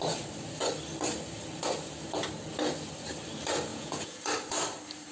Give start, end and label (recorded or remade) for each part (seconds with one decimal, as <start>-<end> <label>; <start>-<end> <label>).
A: 0.0-3.7 recorded; 3.7-4.2 remade; 4.2-5.1 recorded